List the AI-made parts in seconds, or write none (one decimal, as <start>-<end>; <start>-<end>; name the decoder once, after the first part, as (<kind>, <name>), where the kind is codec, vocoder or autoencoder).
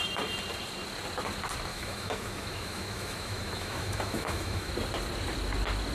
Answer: 1.7-4.7 (autoencoder, DAC-VAE)